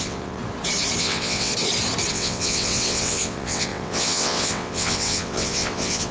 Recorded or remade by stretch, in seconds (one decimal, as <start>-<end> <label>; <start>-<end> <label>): 0.0-0.4 remade; 0.4-1.0 recorded; 1.0-1.5 remade; 1.5-2.1 recorded; 2.1-6.1 remade

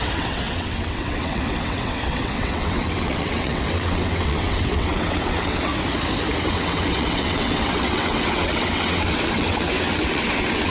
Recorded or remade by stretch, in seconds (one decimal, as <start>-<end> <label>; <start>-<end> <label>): 0.0-5.7 remade; 5.7-6.4 recorded; 6.4-10.7 remade

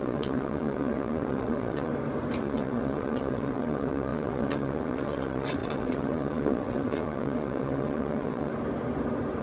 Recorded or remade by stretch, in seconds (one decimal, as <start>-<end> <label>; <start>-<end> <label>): 0.0-1.9 remade; 1.9-2.4 recorded; 2.4-8.5 remade; 8.5-9.4 recorded

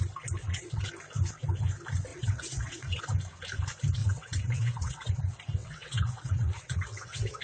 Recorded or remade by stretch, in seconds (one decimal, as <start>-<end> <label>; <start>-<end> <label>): 0.0-0.4 recorded; 0.4-0.9 remade; 0.9-2.1 recorded; 2.1-3.0 remade; 3.0-4.0 recorded; 4.0-5.1 remade; 5.1-5.6 recorded; 5.6-7.4 remade

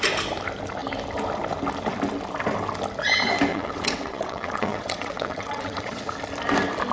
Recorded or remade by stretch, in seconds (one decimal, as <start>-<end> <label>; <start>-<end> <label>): 0.0-3.5 recorded; 3.5-6.0 remade; 6.0-6.9 recorded

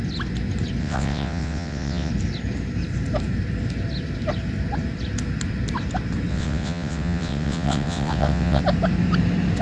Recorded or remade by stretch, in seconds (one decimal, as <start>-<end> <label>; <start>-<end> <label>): 0.0-0.8 recorded; 0.8-2.1 remade; 2.1-6.3 recorded; 6.3-8.6 remade; 8.6-9.6 recorded